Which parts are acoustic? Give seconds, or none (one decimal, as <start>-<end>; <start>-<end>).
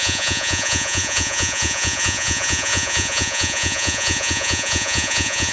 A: none